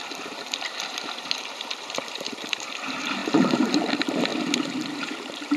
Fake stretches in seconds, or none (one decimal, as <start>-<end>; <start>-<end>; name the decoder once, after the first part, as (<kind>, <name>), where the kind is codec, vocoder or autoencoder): 0.0-4.3 (vocoder, BigVGAN v2); 5.0-5.6